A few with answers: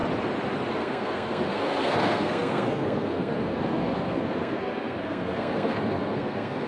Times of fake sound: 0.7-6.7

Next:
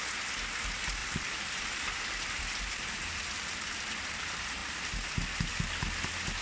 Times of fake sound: 1.0-2.6; 4.6-5.5

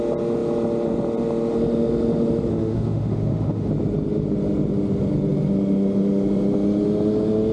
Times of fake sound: 2.5-3.7

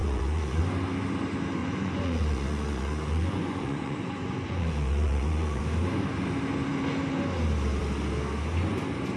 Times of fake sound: 0.0-0.6; 1.6-5.6

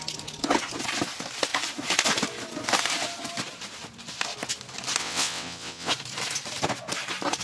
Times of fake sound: 5.0-5.9

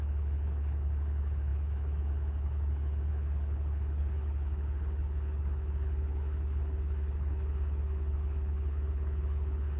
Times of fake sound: 0.0-9.8